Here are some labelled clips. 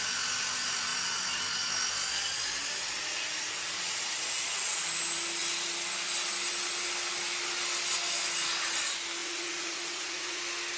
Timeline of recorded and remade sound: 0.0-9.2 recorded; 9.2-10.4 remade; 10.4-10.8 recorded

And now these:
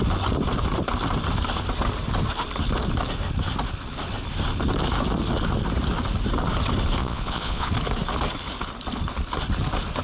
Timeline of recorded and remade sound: 0.0-7.0 recorded; 7.0-7.7 remade; 7.7-10.0 recorded

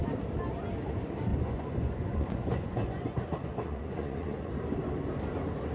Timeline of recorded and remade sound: 0.0-1.3 recorded; 1.3-4.5 remade; 4.5-5.7 recorded

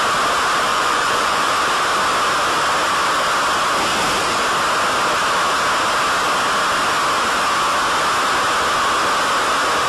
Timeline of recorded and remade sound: 0.0-0.7 recorded; 0.7-1.5 remade; 1.5-9.9 recorded